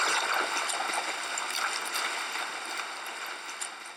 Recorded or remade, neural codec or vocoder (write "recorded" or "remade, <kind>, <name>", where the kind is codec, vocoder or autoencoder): recorded